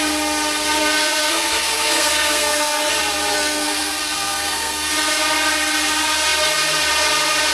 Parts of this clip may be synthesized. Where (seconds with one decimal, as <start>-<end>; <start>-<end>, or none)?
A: 0.8-2.9; 3.3-4.9